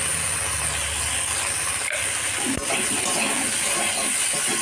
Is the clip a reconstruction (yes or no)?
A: no